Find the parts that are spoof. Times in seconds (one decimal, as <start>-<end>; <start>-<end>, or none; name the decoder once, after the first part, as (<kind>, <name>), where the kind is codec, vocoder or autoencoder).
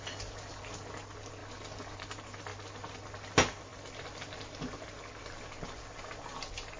none